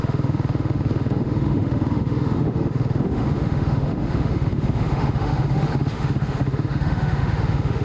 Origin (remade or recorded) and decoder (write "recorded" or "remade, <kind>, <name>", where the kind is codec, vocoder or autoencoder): remade, autoencoder, DAC-VAE